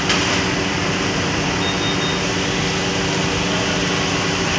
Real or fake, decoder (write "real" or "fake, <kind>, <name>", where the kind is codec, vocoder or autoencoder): real